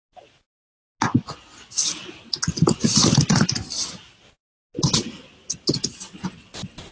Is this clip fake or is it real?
real